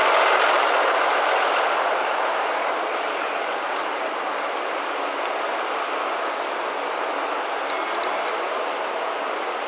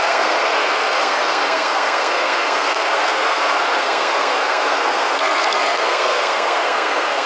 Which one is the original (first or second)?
first